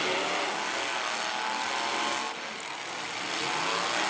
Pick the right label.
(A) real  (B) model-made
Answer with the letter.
A